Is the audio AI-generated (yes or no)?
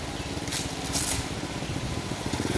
no